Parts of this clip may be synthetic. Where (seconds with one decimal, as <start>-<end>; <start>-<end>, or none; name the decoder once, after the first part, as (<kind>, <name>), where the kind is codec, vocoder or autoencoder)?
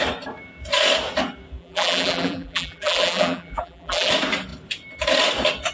1.6-4.1 (vocoder, BigVGAN v2)